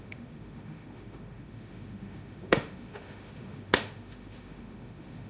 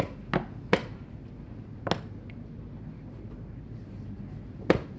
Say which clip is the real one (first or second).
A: second